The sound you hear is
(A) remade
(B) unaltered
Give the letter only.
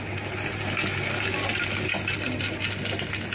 B